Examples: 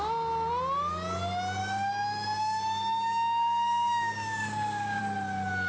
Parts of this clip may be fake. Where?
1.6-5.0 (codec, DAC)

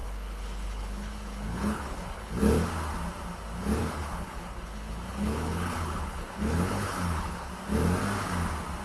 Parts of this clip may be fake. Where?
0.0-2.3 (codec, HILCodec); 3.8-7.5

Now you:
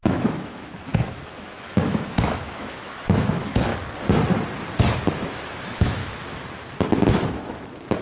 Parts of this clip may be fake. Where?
0.0-3.7 (autoencoder, DAC-VAE); 5.1-6.0; 7.1-8.0

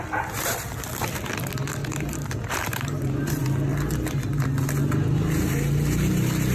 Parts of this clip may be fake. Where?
1.8-3.0 (vocoder, BigVGAN v2)